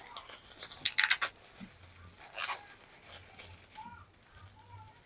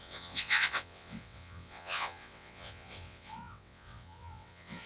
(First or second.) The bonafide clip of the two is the first